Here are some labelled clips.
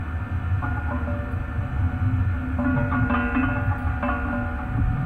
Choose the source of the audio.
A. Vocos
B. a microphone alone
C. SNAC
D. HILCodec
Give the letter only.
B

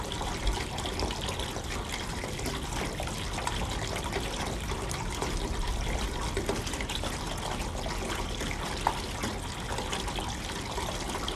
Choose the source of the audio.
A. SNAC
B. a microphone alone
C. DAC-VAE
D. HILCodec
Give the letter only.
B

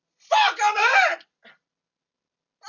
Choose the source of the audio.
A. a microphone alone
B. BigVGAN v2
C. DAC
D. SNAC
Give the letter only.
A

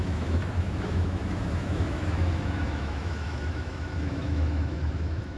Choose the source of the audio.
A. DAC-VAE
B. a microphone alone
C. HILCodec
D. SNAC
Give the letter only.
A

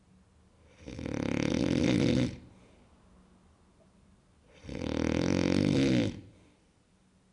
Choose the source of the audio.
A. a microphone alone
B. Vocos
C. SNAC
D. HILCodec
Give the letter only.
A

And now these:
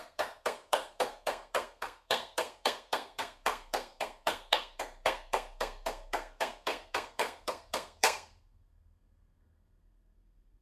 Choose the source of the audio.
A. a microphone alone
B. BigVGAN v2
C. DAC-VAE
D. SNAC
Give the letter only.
D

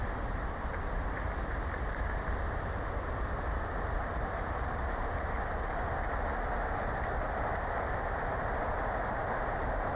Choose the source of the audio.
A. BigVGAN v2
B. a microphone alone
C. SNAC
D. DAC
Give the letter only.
A